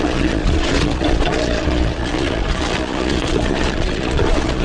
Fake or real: fake